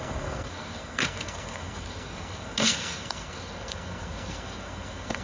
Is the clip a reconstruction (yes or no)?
yes